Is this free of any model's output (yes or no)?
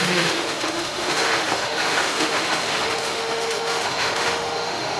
no